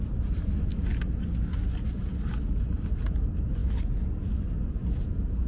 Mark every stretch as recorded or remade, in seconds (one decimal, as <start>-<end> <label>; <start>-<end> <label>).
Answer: 0.0-5.5 recorded